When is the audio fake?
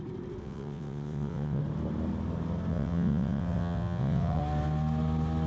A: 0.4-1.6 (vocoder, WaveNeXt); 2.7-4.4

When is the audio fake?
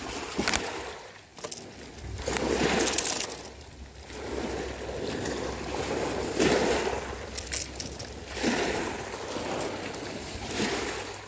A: none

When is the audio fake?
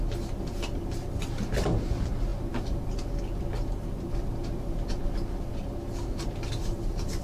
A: none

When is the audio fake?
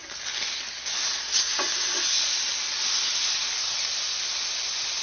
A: none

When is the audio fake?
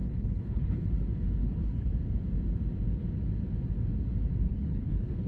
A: 0.0-0.9 (codec, HILCodec); 1.4-1.9; 4.5-5.3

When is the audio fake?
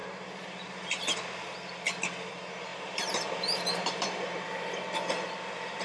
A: 2.3-5.8 (vocoder, BigVGAN v2)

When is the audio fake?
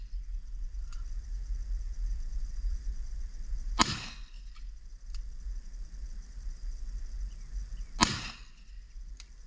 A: none